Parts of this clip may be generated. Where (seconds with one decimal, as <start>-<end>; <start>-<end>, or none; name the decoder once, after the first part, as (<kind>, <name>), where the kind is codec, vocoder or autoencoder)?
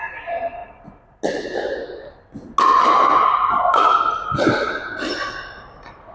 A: none